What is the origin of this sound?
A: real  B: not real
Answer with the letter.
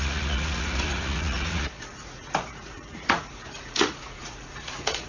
B